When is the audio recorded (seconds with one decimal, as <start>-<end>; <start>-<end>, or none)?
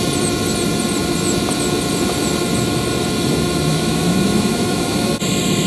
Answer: 0.0-3.7; 5.1-5.7